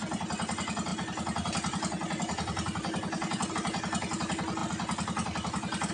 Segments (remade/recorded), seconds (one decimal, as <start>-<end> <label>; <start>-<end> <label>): 0.0-5.9 recorded